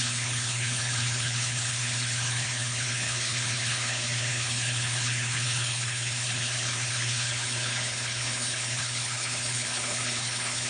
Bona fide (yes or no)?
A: no